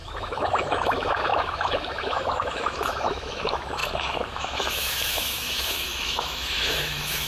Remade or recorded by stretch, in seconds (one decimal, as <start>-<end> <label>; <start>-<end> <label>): 0.0-7.3 remade